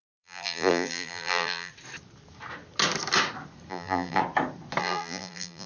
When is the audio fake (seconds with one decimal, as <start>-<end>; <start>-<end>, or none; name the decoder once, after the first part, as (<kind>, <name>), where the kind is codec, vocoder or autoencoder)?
0.0-1.7 (vocoder, BigVGAN v2); 3.7-4.2; 4.8-5.7